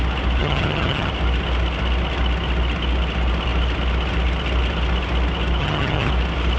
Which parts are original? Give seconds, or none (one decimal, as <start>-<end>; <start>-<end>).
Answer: 0.0-0.4; 1.1-5.6; 6.1-6.6